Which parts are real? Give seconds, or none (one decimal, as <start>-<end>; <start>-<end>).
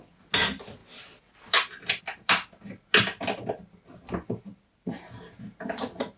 0.0-6.2